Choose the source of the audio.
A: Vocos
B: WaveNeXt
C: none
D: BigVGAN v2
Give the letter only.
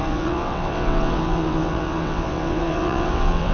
B